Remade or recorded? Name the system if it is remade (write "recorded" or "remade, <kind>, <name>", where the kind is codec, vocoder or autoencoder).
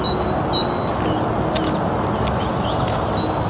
recorded